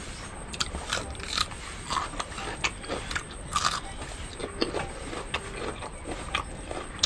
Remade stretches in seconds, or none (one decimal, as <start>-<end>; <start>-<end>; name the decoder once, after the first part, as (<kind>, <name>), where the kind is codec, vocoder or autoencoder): none